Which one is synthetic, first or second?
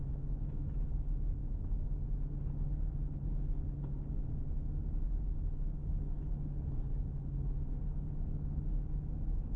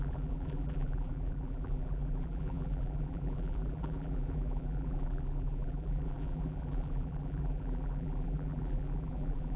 second